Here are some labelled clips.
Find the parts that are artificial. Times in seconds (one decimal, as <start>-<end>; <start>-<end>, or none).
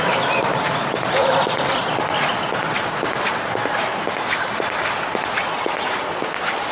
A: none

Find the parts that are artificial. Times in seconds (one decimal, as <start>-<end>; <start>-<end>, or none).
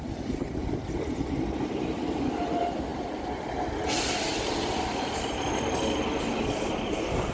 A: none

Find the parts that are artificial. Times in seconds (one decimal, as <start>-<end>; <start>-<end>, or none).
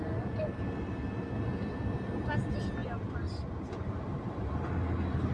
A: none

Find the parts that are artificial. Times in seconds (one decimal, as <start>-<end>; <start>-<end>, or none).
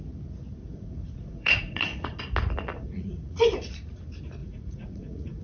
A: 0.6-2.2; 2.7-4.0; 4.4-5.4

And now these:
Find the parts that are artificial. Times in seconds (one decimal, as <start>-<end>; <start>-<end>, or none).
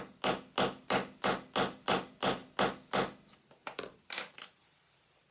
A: 3.6-4.7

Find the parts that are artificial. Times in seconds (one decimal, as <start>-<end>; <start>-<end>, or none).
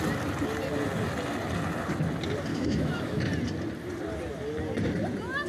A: 2.5-3.2